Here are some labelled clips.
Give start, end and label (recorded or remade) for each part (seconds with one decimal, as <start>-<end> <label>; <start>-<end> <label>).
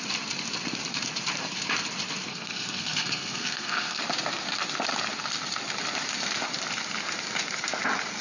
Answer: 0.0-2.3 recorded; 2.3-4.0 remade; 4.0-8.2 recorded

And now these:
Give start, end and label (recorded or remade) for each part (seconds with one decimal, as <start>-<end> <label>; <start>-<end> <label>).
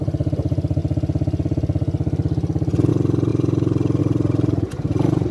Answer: 0.0-0.8 remade; 0.8-2.9 recorded; 2.9-5.3 remade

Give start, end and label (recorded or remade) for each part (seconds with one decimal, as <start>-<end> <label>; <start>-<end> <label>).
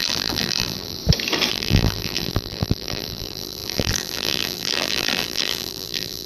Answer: 0.0-1.0 remade; 1.0-1.5 recorded; 1.5-6.3 remade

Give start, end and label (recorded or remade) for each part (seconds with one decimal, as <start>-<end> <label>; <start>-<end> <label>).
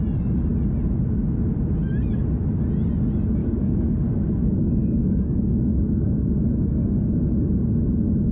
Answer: 0.0-3.4 recorded; 3.4-6.4 remade; 6.4-8.3 recorded